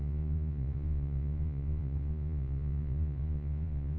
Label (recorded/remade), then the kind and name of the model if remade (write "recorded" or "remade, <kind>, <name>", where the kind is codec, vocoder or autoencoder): remade, vocoder, Vocos